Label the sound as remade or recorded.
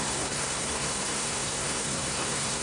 remade